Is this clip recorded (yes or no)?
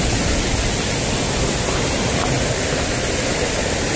yes